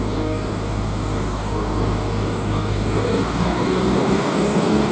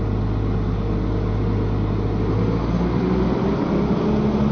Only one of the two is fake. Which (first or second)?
first